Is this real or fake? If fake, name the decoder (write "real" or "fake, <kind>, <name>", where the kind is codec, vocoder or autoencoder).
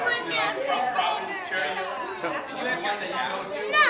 real